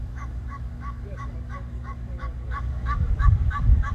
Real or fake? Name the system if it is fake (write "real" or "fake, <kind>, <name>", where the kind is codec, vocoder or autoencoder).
fake, codec, DAC